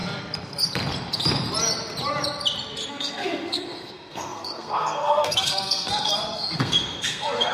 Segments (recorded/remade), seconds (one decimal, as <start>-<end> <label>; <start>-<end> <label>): 0.0-2.9 recorded; 2.9-7.5 remade